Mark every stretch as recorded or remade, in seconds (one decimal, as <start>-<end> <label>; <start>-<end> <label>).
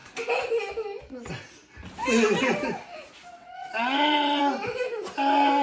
0.0-3.4 recorded; 3.4-4.4 remade; 4.4-5.6 recorded